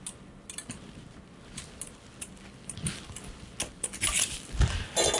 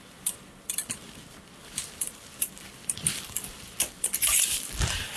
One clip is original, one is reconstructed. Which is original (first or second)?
first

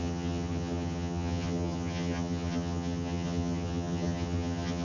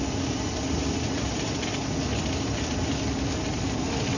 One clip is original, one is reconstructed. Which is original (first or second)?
second